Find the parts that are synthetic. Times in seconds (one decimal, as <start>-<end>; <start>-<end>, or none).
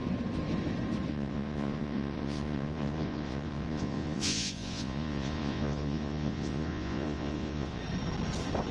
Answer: 1.1-7.8